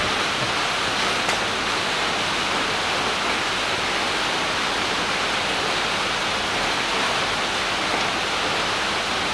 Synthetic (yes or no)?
no